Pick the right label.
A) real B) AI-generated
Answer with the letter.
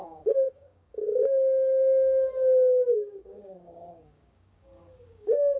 B